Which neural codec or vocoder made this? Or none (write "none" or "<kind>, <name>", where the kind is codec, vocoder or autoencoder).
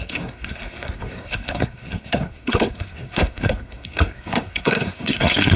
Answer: codec, SNAC